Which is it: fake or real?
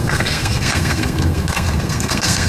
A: fake